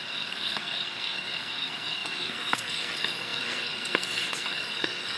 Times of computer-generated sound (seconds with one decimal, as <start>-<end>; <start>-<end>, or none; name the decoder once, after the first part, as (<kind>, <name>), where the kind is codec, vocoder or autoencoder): 0.0-5.2 (codec, SNAC)